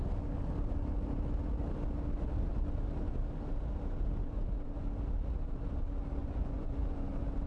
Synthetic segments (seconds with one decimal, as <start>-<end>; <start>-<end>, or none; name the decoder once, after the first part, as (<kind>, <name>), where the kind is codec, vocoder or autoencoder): 6.2-7.1 (vocoder, Vocos)